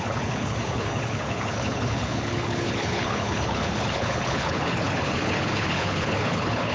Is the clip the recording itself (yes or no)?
no